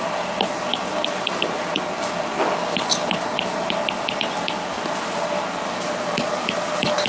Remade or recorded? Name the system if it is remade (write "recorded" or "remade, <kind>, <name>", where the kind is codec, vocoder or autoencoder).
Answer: recorded